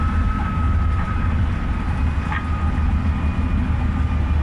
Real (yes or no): yes